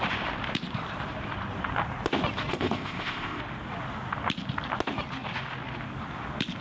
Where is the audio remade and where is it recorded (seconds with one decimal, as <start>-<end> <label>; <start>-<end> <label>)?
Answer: 0.0-2.5 recorded; 2.5-3.4 remade; 3.4-6.6 recorded